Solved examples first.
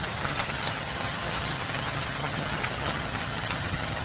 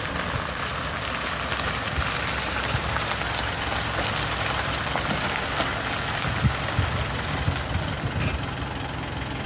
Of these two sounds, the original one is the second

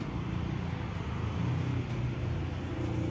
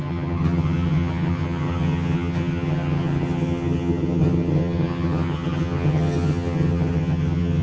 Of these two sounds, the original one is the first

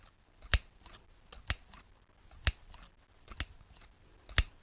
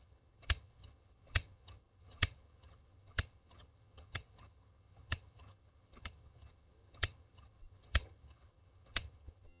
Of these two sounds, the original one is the first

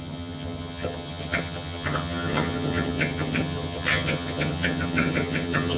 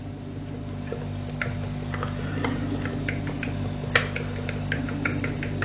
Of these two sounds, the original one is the second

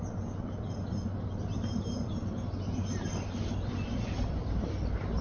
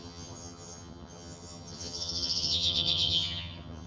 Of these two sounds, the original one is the first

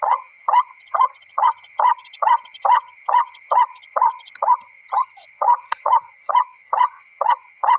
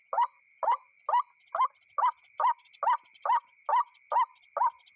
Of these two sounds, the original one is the second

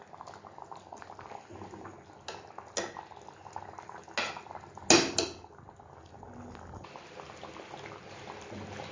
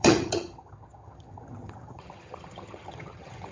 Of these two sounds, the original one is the first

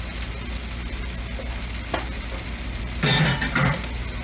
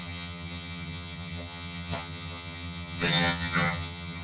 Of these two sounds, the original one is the first